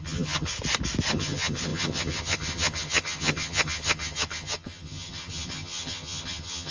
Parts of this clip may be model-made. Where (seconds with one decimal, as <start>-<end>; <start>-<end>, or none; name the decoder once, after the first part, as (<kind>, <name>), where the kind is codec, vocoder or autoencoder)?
0.0-0.5 (vocoder, HiFi-GAN); 1.1-6.7